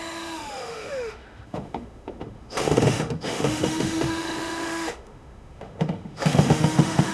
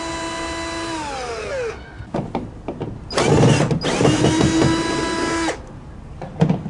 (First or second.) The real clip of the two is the second